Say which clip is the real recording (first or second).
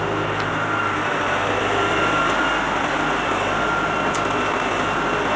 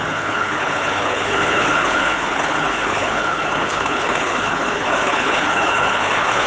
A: first